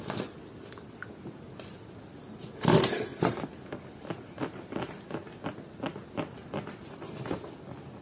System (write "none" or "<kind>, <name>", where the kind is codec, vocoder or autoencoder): none